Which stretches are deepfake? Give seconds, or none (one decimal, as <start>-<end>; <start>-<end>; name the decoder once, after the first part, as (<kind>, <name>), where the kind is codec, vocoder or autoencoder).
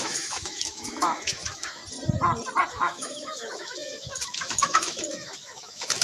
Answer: 0.0-1.8 (autoencoder, DAC-VAE); 2.7-6.0